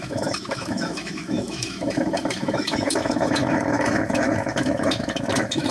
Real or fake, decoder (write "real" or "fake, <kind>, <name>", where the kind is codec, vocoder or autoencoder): fake, autoencoder, DAC-VAE